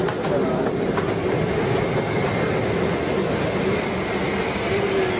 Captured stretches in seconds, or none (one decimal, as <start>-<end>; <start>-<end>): 0.0-5.2